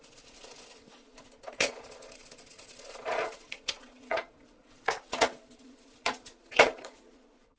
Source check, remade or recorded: remade